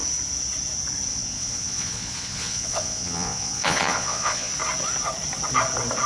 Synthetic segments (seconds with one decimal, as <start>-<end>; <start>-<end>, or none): 1.1-4.5